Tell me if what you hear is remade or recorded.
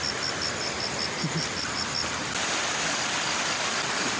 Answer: recorded